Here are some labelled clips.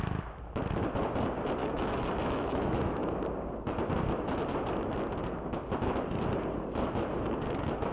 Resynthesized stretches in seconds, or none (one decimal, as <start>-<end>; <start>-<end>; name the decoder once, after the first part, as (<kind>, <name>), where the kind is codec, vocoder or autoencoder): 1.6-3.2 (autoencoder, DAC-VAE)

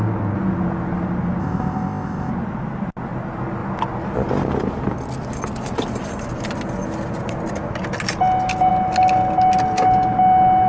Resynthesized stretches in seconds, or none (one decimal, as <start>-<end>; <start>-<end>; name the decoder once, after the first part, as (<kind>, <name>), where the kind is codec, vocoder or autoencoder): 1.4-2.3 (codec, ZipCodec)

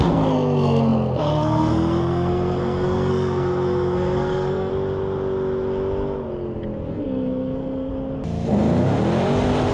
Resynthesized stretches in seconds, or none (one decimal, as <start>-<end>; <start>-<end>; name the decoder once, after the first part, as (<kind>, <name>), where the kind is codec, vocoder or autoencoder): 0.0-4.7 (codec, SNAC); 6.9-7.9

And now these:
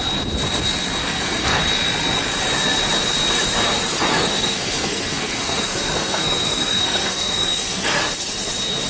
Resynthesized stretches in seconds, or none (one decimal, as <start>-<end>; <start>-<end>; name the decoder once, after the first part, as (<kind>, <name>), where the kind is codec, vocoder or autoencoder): 1.0-1.6 (codec, SNAC); 4.1-8.0

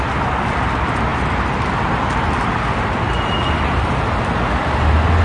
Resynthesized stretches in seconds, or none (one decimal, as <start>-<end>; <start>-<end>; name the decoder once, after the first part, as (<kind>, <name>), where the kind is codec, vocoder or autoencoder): none

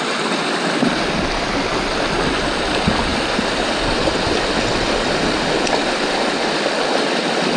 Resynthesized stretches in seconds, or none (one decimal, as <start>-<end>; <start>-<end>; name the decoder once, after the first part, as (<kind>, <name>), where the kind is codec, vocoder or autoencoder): none